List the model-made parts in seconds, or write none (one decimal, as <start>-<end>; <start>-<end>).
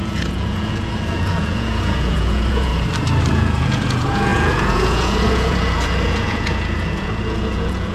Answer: 0.0-2.7; 3.3-7.9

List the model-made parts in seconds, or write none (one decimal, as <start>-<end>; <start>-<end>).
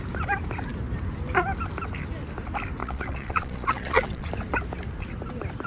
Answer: 2.8-4.3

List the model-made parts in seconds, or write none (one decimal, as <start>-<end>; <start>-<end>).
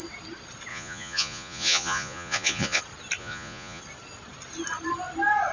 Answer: 0.7-2.8; 3.2-3.8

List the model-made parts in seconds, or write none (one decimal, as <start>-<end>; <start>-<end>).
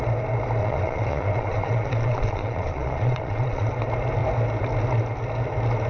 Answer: 0.6-3.7